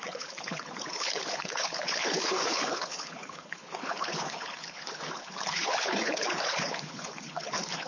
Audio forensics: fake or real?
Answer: fake